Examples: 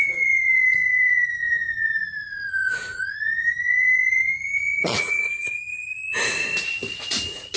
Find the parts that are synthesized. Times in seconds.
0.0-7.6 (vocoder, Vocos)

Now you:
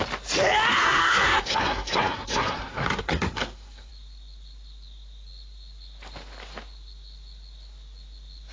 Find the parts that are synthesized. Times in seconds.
0.7-3.9 (codec, SNAC)